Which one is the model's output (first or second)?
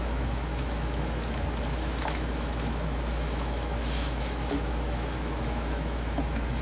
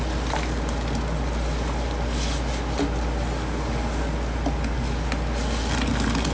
first